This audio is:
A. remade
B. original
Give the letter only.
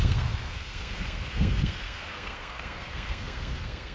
A